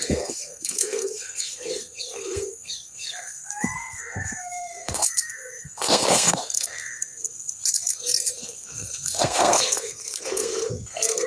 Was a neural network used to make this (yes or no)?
yes